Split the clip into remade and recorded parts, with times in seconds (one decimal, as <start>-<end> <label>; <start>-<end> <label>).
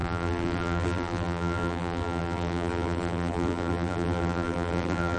0.0-5.2 remade